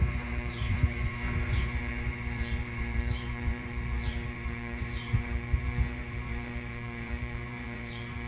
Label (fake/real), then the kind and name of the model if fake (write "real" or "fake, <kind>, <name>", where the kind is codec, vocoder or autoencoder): fake, vocoder, Vocos